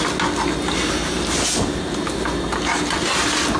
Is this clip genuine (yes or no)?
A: yes